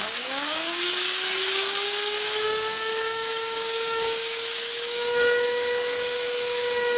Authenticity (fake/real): fake